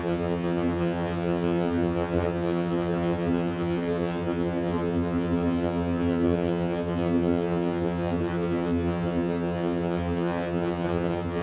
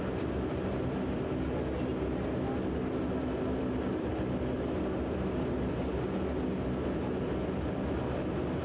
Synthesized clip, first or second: first